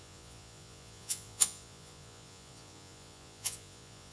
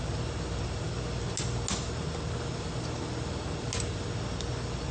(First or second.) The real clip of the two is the second